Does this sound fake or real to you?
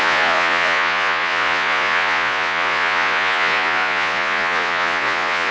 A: fake